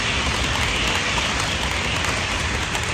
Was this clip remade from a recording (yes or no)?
no